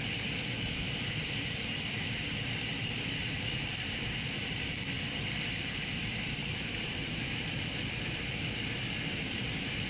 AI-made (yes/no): yes